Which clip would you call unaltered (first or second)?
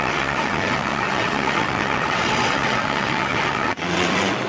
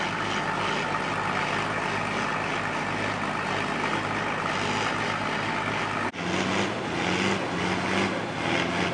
second